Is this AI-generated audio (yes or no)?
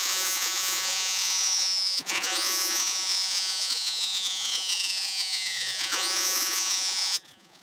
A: yes